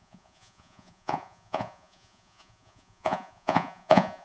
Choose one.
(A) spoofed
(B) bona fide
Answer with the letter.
A